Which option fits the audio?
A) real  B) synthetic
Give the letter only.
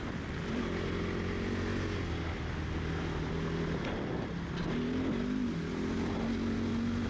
A